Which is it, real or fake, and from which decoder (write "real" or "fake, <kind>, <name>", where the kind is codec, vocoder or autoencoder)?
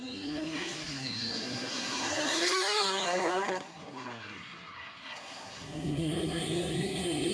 fake, codec, SNAC